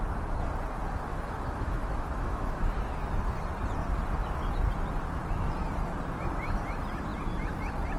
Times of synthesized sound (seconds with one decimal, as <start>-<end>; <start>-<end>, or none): 1.1-2.6